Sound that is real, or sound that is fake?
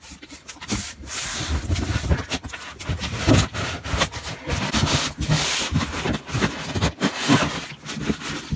real